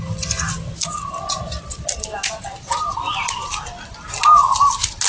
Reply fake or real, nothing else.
real